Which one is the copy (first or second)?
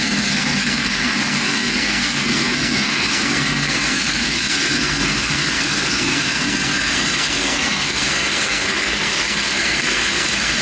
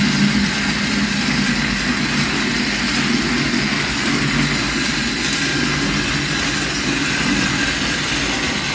first